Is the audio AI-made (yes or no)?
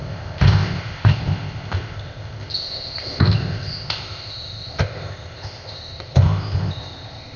yes